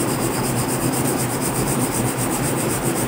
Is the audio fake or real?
fake